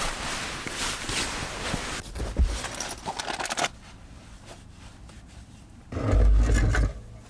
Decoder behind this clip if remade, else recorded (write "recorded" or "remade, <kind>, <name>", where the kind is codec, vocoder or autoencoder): recorded